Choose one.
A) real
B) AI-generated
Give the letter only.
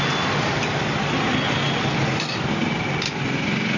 A